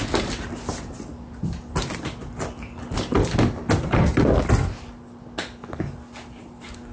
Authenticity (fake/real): real